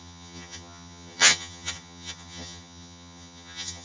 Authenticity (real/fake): fake